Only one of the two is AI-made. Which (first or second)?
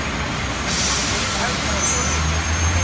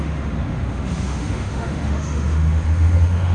second